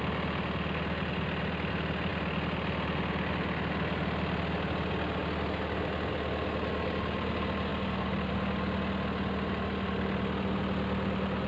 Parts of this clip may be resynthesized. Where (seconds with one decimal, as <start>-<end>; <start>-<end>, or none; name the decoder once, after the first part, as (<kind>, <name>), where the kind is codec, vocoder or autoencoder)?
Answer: 7.7-8.3 (vocoder, BigVGAN v2)

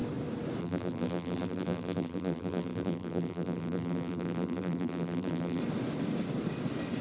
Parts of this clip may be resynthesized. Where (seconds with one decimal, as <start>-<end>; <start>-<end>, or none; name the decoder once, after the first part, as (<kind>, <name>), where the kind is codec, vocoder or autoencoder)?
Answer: 0.6-5.6 (vocoder, BigVGAN v2)

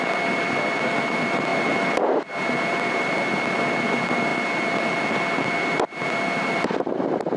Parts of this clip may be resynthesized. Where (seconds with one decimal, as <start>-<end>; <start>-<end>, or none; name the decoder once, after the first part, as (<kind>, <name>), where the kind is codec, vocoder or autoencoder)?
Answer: none

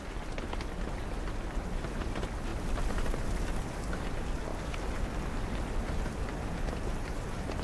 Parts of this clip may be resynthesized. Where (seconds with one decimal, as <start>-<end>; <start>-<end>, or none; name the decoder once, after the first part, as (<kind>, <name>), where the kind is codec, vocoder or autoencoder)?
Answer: 4.5-5.2 (vocoder, BigVGAN v2)